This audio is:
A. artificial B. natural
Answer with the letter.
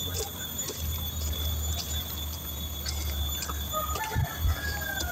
B